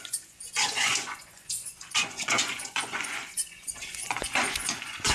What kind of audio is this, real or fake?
fake